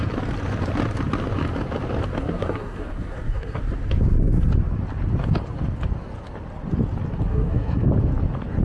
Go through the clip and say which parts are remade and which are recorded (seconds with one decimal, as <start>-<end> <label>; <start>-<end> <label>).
0.0-2.2 recorded; 2.2-3.6 remade; 3.6-7.3 recorded; 7.3-7.9 remade; 7.9-8.6 recorded

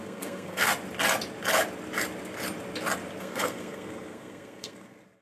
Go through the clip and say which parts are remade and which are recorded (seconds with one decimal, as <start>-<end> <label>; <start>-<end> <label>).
0.0-0.7 remade; 0.7-3.2 recorded; 3.2-5.2 remade

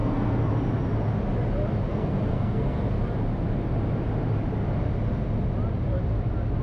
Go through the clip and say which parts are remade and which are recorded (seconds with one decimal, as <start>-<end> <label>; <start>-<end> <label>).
0.0-0.5 remade; 0.5-1.9 recorded; 1.9-2.8 remade; 2.8-6.6 recorded

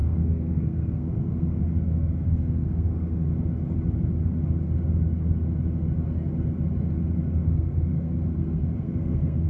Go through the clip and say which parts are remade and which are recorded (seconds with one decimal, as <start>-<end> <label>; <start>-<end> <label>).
0.0-3.3 remade; 3.3-7.4 recorded; 7.4-9.5 remade

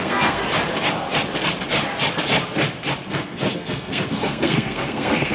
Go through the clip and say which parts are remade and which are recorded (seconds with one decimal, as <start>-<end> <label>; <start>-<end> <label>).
0.0-0.4 remade; 0.4-3.1 recorded; 3.1-5.3 remade

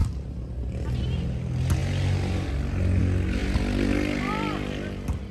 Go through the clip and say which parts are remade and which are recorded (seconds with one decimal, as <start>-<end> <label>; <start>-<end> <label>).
0.0-5.3 recorded

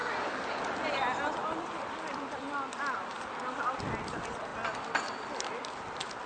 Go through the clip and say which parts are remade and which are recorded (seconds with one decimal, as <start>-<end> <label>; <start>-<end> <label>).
0.0-6.3 recorded